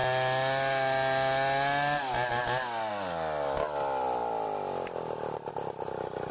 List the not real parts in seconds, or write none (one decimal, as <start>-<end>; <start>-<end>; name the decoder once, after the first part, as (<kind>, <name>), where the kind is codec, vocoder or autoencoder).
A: none

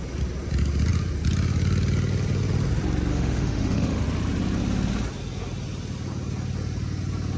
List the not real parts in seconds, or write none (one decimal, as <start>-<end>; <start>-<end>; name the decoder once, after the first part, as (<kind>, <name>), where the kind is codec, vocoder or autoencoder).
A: 3.1-4.0 (autoencoder, DAC-VAE)

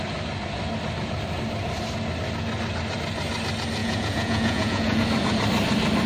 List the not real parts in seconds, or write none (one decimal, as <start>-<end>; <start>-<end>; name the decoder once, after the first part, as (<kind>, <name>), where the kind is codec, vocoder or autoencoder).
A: 3.8-5.0 (vocoder, Vocos)

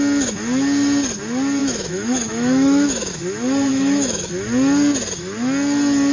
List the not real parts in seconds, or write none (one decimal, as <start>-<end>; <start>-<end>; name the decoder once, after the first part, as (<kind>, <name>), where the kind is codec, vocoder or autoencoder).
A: 1.6-3.1 (autoencoder, DAC-VAE); 3.7-4.3